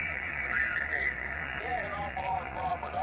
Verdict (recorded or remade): remade